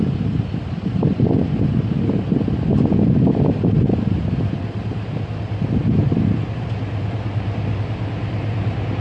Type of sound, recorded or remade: recorded